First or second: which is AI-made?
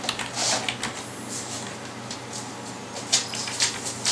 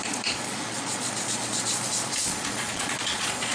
second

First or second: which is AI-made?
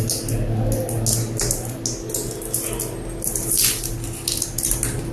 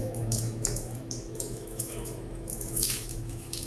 second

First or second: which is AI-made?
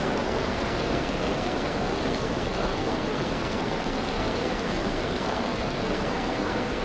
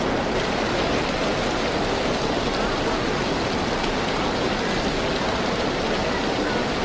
first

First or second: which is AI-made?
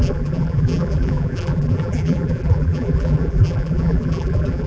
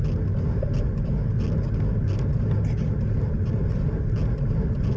first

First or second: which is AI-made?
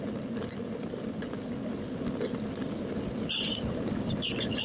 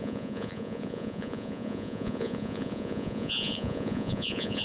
second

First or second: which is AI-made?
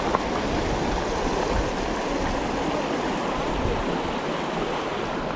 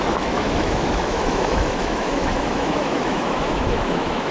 second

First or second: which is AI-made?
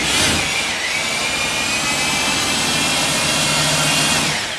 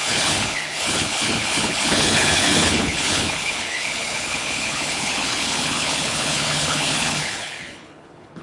second